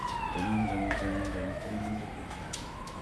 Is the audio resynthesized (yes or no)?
yes